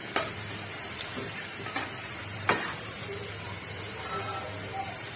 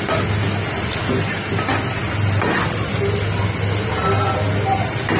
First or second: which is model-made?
first